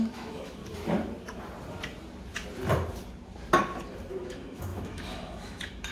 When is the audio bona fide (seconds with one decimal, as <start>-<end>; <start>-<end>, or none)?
0.6-4.1